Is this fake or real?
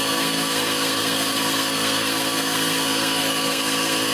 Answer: fake